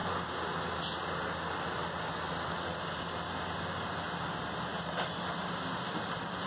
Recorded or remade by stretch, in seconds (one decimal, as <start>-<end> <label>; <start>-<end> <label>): 0.0-6.5 recorded